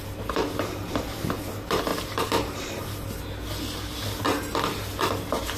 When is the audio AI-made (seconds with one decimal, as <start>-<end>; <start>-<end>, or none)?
1.9-2.7